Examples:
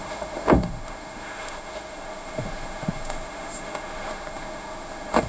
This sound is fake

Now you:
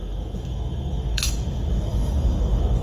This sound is fake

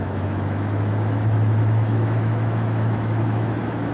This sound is fake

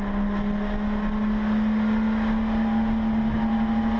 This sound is real